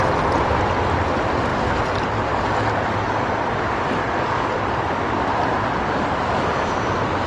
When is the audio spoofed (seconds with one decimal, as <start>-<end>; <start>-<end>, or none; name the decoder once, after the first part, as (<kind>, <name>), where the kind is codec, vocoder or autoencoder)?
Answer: none